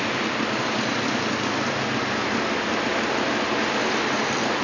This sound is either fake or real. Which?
real